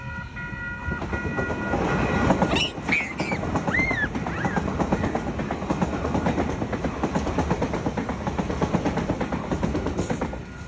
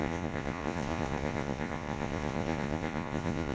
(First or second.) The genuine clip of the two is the first